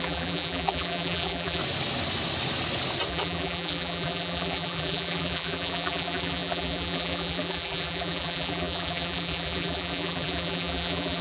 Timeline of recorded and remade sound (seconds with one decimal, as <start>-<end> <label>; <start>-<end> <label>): 0.0-1.6 remade; 1.6-3.1 recorded; 3.1-11.2 remade